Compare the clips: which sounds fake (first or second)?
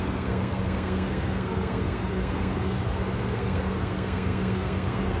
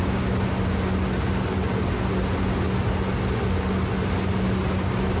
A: first